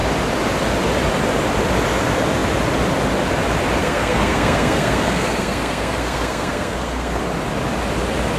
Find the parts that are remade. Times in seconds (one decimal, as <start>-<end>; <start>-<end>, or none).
3.8-7.2